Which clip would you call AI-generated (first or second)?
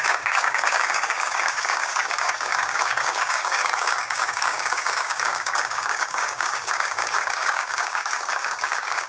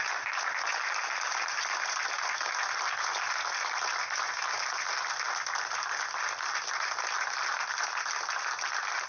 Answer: first